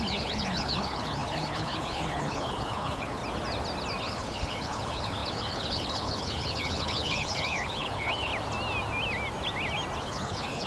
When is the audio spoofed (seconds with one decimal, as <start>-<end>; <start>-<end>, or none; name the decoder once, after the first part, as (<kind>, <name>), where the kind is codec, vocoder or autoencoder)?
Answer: 0.0-3.2 (codec, HILCodec); 4.0-8.3; 10.0-10.7